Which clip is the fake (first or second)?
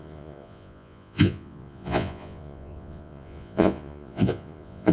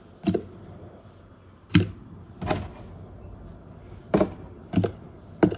first